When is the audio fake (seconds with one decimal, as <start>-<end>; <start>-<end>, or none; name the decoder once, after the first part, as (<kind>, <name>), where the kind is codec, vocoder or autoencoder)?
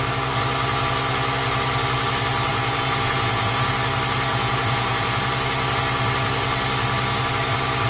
2.5-3.7 (vocoder, Vocos); 4.3-5.2